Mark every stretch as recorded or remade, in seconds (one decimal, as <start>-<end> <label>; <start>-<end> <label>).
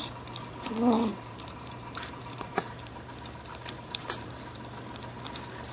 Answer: 0.0-1.1 recorded; 1.1-4.3 remade; 4.3-5.7 recorded